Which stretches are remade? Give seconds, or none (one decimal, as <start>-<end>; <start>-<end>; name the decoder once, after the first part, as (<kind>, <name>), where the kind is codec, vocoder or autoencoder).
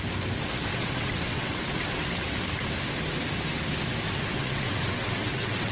0.7-2.2 (vocoder, WaveNeXt); 4.3-5.7